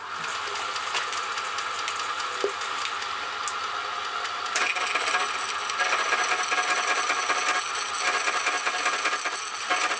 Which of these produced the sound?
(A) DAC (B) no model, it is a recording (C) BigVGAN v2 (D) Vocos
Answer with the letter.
B